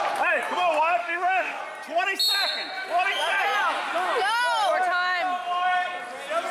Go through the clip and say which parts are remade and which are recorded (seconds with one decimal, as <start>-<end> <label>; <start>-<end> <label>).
0.0-1.0 recorded; 1.0-1.6 remade; 1.6-6.5 recorded

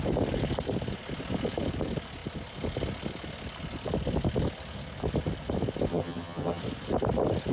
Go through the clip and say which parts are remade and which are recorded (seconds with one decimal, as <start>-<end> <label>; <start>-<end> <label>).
0.0-5.9 recorded; 5.9-6.6 remade; 6.6-7.5 recorded

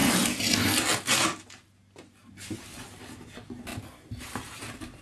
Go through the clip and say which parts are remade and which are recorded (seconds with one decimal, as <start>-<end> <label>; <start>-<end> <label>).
0.0-3.7 recorded; 3.7-4.6 remade; 4.6-5.0 recorded

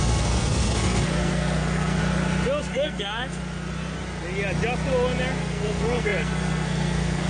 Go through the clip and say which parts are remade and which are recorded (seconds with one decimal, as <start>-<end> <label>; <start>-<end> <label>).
0.0-2.0 remade; 2.0-2.6 recorded; 2.6-3.4 remade; 3.4-5.4 recorded; 5.4-7.3 remade

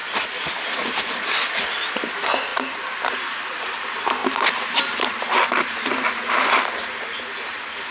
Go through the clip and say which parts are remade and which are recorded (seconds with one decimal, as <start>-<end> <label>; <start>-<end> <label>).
0.0-7.9 recorded